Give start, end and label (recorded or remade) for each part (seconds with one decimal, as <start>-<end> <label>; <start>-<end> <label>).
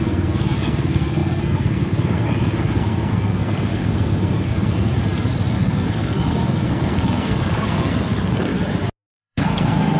0.0-4.9 remade; 4.9-5.5 recorded; 5.5-8.5 remade; 8.5-9.1 recorded; 9.1-10.0 remade